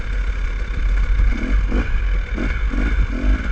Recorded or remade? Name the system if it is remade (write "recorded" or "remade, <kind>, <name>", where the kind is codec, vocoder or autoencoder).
recorded